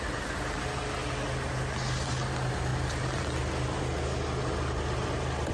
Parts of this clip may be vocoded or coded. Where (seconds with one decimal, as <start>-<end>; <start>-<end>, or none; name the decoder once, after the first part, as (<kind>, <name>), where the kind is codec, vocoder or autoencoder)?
none